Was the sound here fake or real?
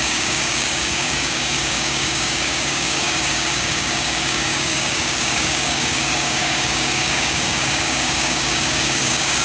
fake